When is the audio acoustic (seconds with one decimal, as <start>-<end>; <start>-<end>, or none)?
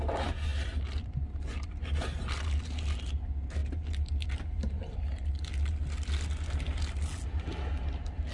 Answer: 0.0-0.5; 1.5-8.3